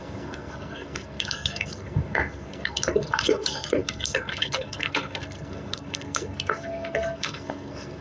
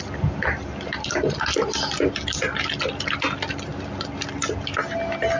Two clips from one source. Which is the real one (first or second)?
second